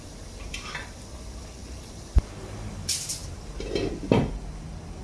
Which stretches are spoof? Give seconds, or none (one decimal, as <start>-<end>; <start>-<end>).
none